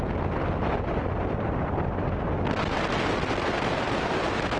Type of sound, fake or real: real